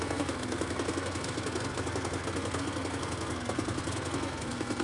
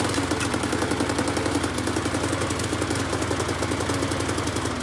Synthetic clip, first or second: first